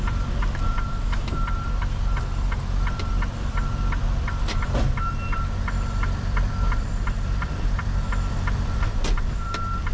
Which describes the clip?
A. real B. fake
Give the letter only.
B